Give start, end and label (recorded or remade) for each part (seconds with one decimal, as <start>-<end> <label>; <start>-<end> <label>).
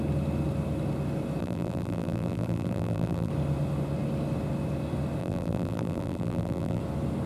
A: 0.0-1.4 recorded; 1.4-3.3 remade; 3.3-5.2 recorded; 5.2-6.8 remade; 6.8-7.3 recorded